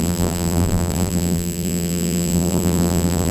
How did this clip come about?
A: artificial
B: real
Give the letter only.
A